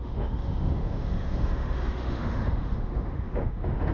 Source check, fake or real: fake